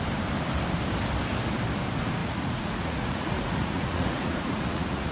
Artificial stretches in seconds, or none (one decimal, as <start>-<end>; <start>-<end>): 2.2-5.1